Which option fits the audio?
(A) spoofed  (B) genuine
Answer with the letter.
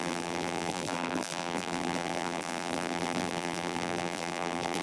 A